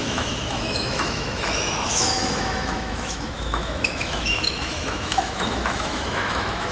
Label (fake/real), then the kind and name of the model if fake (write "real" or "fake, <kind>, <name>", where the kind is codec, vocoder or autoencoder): fake, autoencoder, DAC-VAE